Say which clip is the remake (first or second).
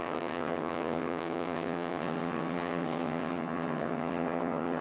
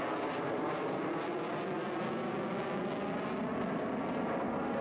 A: first